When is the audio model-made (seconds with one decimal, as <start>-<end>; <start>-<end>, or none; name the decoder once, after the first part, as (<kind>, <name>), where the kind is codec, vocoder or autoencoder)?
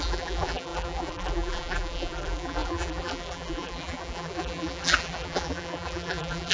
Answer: 0.0-6.5 (vocoder, BigVGAN v2)